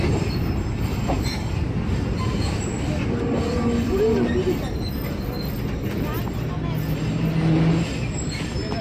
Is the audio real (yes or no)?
yes